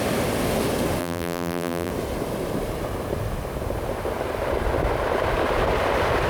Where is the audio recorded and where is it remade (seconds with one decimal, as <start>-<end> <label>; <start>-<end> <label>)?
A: 0.0-1.0 recorded; 1.0-1.9 remade; 1.9-6.3 recorded